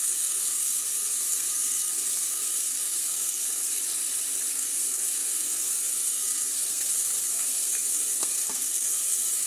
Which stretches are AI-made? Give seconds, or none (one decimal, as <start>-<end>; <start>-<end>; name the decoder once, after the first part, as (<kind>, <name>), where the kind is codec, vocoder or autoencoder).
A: 0.0-3.8 (codec, SNAC); 4.5-9.5